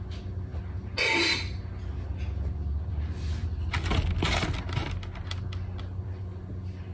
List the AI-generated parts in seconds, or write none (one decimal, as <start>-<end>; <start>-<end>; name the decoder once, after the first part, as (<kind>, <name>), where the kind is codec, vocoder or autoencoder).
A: none